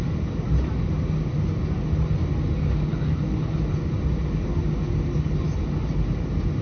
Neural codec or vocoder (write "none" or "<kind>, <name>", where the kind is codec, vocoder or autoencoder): none